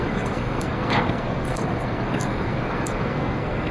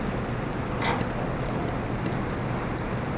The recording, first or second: second